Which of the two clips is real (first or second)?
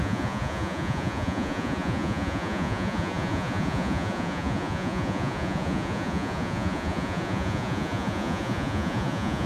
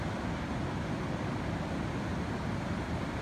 second